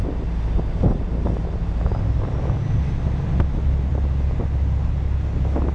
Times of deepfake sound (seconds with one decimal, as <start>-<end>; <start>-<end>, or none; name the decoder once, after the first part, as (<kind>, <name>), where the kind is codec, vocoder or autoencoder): none